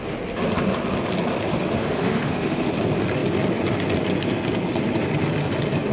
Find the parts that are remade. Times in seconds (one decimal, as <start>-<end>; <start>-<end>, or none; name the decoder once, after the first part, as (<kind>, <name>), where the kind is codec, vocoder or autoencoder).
1.5-2.7 (autoencoder, DAC-VAE)